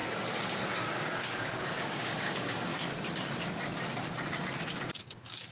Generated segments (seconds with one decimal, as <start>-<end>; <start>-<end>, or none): 0.9-2.7; 5.0-5.5